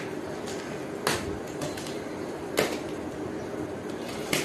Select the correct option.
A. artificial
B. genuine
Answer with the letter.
B